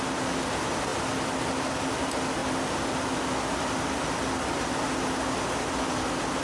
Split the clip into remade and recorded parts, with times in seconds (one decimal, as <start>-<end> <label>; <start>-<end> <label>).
0.0-6.4 recorded